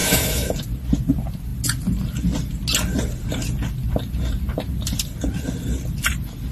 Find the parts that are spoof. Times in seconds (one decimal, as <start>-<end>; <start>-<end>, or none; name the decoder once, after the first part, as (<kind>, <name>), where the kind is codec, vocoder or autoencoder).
0.0-0.5 (autoencoder, DAC-VAE)